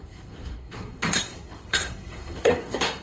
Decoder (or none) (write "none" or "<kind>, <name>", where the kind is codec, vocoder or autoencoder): codec, SNAC